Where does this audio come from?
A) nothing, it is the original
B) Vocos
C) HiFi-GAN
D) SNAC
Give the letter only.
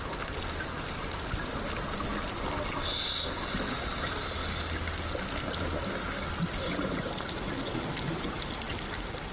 A